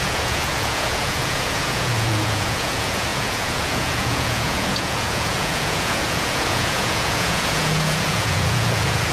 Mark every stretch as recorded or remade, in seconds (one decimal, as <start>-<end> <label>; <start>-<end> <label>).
0.0-9.1 remade